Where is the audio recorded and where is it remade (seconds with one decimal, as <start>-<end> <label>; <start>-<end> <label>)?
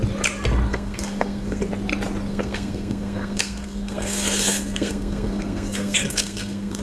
0.0-0.7 recorded; 0.7-1.6 remade; 1.6-2.3 recorded; 2.3-6.8 remade